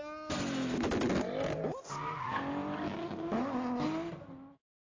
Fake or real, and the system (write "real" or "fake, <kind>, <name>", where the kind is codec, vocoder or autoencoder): real